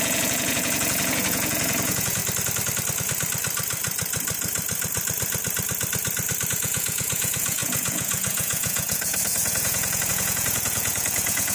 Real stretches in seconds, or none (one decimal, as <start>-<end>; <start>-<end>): 2.2-6.5